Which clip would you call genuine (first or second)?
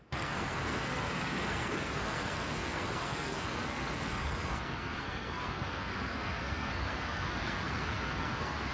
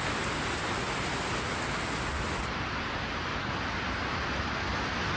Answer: second